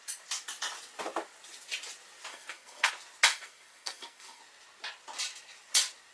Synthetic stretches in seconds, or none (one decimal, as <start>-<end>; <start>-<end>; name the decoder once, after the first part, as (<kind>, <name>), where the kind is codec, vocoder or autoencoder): 2.3-2.9 (codec, SNAC); 3.3-4.4